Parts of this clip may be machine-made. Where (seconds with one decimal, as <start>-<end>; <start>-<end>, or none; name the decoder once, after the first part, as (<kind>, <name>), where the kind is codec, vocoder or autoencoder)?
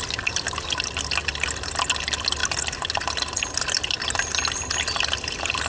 none